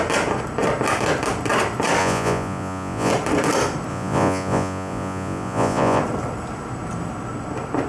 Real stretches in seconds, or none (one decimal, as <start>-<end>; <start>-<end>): 0.0-2.0; 3.1-3.9; 6.0-7.9